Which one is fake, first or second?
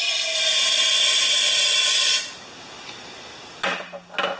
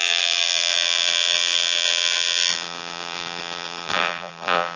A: second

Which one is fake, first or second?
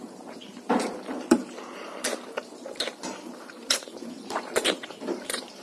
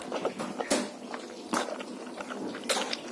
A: first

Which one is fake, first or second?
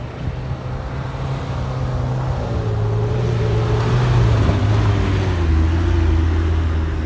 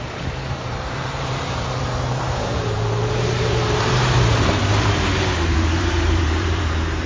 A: second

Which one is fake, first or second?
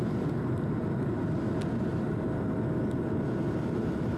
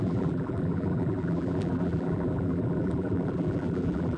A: second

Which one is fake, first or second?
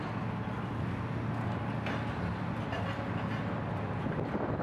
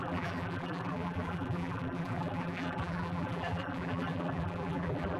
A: second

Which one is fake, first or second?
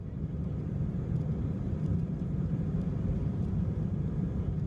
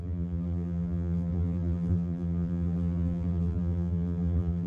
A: second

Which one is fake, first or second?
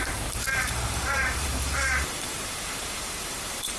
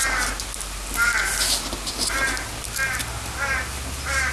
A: first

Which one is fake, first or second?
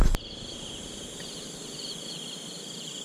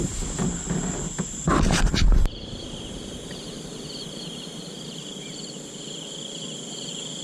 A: second